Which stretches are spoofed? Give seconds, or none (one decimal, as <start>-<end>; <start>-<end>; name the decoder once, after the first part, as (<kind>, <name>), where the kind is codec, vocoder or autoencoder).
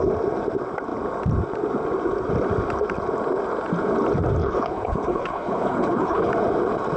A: 4.4-6.3 (codec, HILCodec)